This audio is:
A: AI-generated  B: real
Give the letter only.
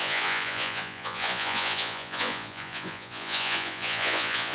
A